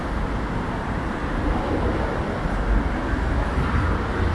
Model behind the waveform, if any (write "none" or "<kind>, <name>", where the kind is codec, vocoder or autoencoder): none